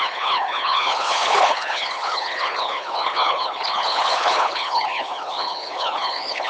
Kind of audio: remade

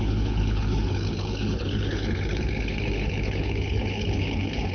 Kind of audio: remade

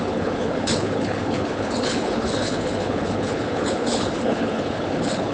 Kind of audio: remade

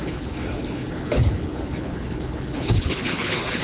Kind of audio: remade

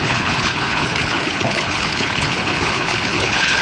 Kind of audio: remade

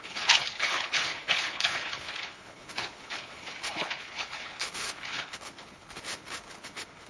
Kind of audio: remade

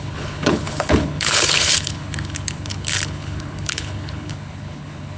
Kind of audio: remade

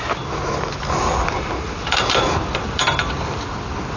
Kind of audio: recorded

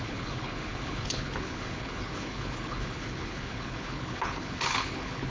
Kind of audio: remade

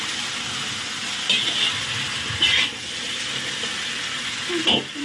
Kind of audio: recorded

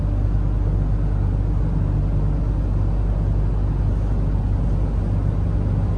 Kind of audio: recorded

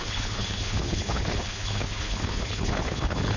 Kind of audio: remade